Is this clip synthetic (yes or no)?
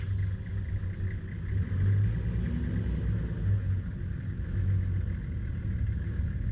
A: no